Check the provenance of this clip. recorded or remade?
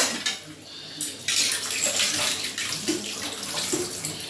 recorded